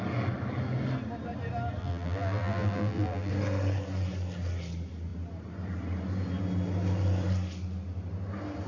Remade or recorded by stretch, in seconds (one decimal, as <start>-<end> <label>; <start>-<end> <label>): 0.0-1.8 recorded; 1.8-3.3 remade; 3.3-8.7 recorded